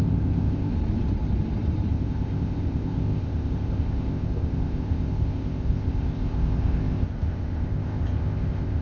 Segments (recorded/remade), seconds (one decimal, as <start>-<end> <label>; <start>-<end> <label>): 0.0-0.7 remade; 0.7-1.9 recorded; 1.9-8.8 remade